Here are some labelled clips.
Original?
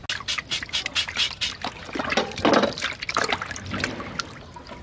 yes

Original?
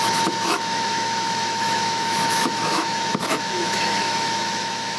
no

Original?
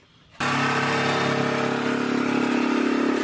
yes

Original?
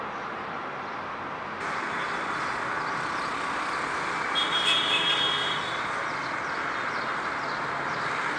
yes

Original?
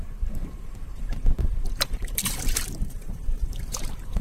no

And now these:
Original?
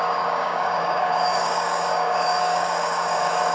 no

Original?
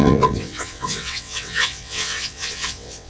no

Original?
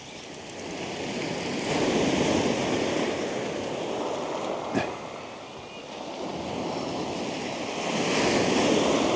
yes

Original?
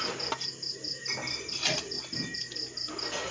yes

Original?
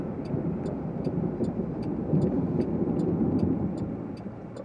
yes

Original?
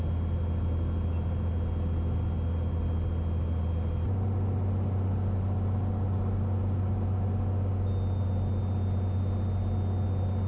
yes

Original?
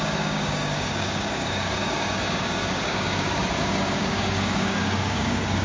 no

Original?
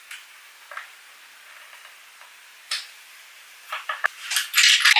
yes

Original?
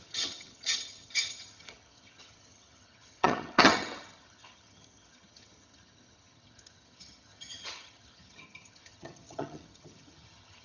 no